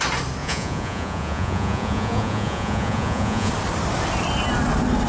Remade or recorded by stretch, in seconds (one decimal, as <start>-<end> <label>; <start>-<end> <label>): 0.0-0.4 recorded; 0.4-3.5 remade; 3.5-5.1 recorded